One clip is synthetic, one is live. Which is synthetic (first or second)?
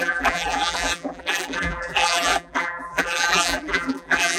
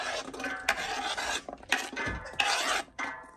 first